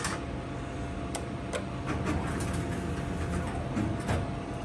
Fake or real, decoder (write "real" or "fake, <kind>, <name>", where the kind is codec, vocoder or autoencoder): real